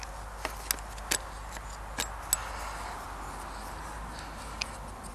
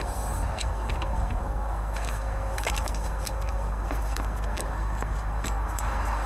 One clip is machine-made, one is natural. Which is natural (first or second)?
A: first